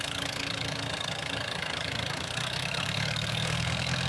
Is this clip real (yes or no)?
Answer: no